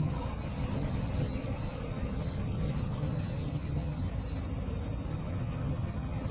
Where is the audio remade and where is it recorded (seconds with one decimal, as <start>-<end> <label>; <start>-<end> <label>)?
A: 0.0-4.1 remade; 4.1-5.1 recorded; 5.1-6.3 remade